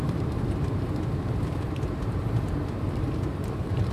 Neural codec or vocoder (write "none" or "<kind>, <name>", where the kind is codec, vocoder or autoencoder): vocoder, BigVGAN v2